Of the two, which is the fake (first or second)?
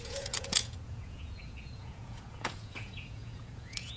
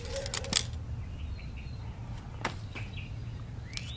first